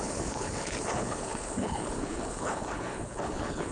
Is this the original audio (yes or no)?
no